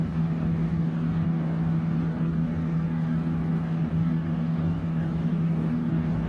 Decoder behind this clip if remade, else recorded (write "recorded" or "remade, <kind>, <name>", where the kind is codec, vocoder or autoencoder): remade, codec, DAC